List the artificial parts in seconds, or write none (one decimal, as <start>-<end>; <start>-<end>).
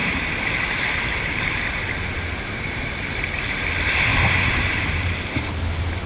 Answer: 0.0-3.6; 4.1-5.4